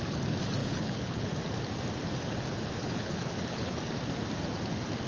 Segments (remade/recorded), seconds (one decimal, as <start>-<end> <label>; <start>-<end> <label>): 0.0-0.6 recorded; 0.6-1.3 remade; 1.3-2.8 recorded; 2.8-3.8 remade; 3.8-5.1 recorded